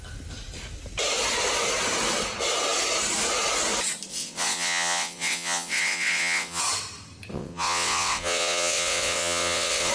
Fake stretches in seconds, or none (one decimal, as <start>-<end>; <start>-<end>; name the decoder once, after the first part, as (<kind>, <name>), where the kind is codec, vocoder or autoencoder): 4.1-6.6 (vocoder, WaveNeXt); 7.3-9.9